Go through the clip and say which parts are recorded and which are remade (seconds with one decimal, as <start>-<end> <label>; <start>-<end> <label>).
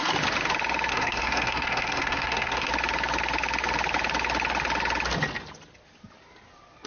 0.0-0.9 recorded; 0.9-2.7 remade; 2.7-6.9 recorded